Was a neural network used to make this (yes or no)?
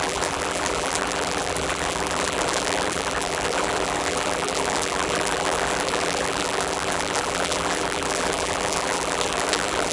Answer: yes